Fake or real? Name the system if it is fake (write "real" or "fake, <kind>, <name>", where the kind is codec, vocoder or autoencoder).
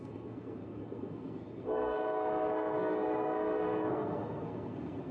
fake, codec, SNAC